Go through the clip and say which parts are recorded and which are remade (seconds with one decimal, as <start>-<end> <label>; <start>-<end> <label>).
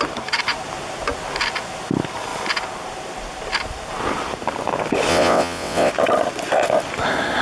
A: 0.0-5.1 recorded; 5.1-5.9 remade; 5.9-7.4 recorded